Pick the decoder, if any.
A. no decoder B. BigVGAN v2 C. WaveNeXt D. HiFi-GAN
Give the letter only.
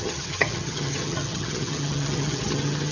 D